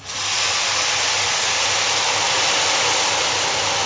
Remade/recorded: recorded